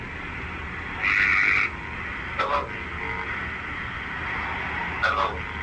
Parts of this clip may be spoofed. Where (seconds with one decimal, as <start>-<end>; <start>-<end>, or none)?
none